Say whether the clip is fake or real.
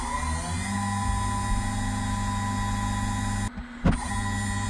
real